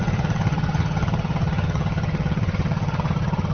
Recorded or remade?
remade